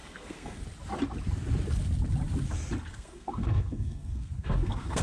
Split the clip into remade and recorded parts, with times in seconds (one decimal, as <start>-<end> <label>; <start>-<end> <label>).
0.0-0.6 remade; 0.6-2.9 recorded; 2.9-5.0 remade

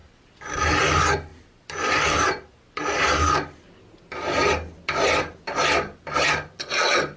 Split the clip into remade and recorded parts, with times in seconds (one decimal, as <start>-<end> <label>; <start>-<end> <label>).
0.0-7.2 recorded

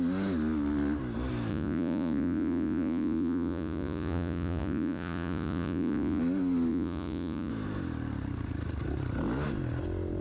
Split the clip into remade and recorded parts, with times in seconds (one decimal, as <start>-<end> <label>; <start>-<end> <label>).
0.0-1.5 recorded; 1.5-6.2 remade; 6.2-6.7 recorded; 6.7-7.5 remade; 7.5-10.2 recorded

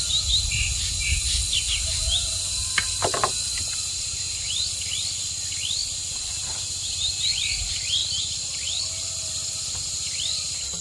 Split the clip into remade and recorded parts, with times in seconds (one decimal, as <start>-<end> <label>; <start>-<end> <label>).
0.0-3.0 recorded; 3.0-4.9 remade; 4.9-5.8 recorded; 5.8-7.1 remade; 7.1-8.0 recorded; 8.0-8.8 remade; 8.8-10.8 recorded

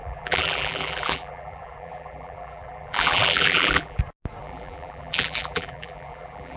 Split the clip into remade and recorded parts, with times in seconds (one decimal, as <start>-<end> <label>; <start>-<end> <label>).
0.0-4.0 remade; 4.0-4.4 recorded; 4.4-6.6 remade

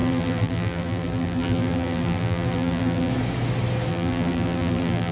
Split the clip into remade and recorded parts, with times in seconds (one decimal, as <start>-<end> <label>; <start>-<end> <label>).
0.0-3.1 remade; 3.1-3.9 recorded; 3.9-5.1 remade

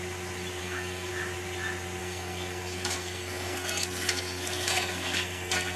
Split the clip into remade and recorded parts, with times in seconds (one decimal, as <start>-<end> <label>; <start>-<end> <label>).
0.0-0.6 recorded; 0.6-1.1 remade; 1.1-2.0 recorded; 2.0-5.8 remade